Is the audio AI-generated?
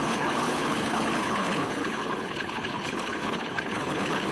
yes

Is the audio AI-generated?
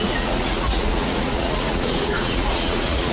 yes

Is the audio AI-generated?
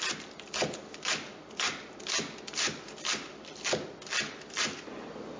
no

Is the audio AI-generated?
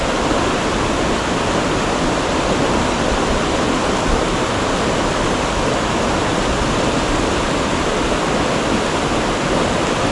no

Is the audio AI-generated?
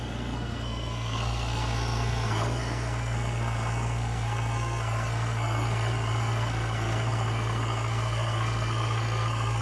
yes